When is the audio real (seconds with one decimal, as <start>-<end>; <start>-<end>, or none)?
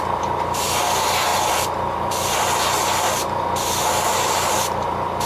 0.0-1.3; 4.5-5.3